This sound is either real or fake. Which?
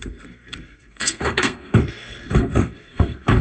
fake